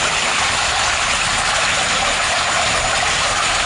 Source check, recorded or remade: recorded